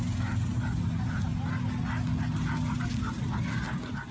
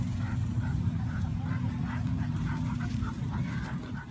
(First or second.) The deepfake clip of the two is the second